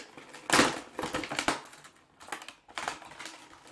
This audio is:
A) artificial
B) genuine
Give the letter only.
B